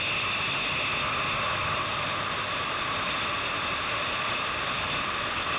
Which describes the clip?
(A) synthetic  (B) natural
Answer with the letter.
B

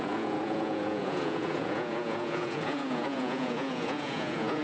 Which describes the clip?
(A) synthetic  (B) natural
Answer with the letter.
A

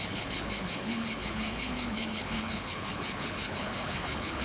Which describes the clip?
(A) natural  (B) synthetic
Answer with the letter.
B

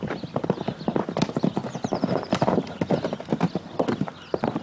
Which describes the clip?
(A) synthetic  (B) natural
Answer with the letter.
B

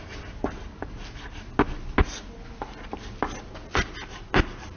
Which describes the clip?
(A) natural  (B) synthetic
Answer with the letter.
A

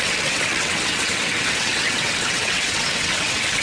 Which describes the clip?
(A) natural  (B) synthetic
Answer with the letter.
B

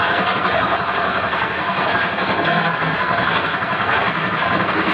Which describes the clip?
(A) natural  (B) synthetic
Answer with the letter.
B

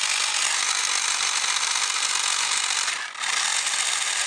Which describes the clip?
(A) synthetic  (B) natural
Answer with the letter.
B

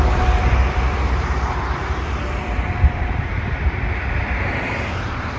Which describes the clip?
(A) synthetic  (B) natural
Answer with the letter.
A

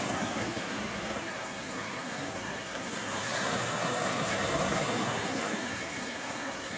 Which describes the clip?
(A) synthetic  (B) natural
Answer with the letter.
A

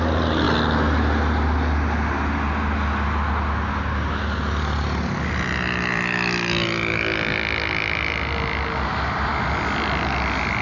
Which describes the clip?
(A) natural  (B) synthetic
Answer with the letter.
A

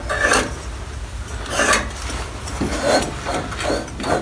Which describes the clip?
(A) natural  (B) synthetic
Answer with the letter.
A